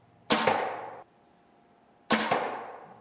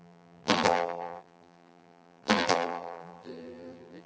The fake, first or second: second